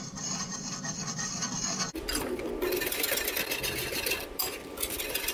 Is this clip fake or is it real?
real